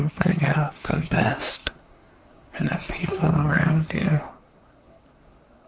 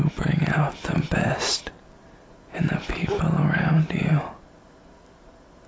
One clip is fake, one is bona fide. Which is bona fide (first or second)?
second